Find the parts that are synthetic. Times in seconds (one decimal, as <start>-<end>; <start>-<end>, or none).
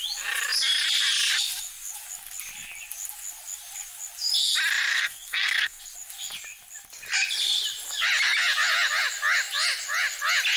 4.9-5.8